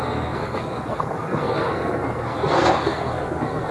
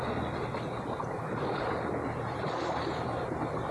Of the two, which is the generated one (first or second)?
first